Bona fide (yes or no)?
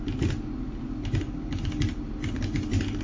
yes